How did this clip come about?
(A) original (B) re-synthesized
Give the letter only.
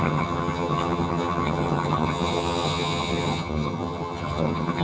B